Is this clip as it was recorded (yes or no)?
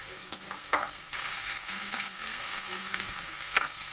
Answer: no